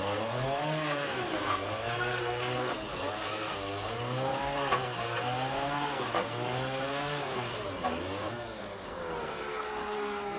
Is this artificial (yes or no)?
yes